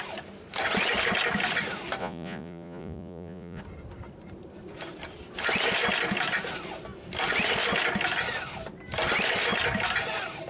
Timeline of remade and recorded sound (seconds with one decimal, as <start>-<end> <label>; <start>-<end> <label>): 0.0-2.0 recorded; 2.0-3.6 remade; 3.6-10.5 recorded